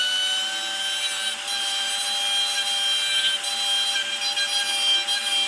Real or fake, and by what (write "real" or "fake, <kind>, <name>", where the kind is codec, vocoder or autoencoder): real